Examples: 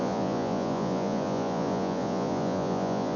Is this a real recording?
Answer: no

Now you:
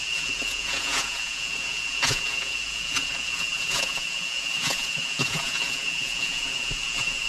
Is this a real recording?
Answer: no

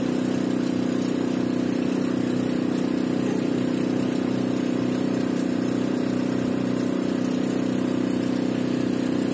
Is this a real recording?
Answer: yes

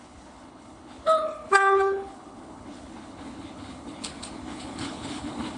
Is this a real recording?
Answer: no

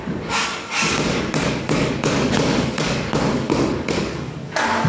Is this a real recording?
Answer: no